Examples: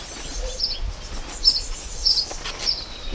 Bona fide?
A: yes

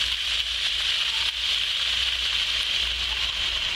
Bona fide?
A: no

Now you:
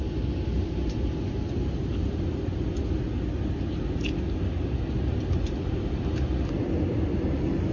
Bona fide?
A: yes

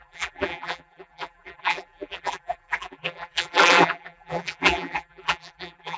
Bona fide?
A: no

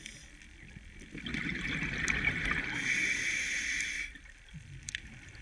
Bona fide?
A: yes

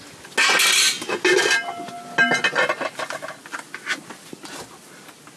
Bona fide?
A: yes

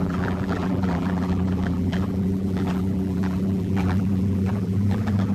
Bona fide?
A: no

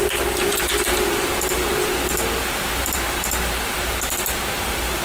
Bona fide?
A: no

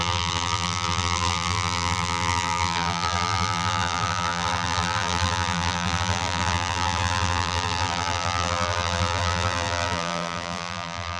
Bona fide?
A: no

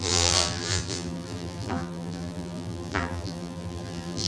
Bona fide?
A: no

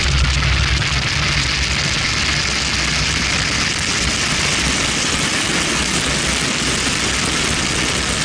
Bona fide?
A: yes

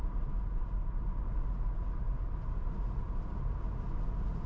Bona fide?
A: yes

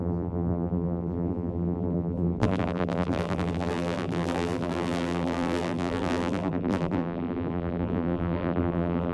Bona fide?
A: no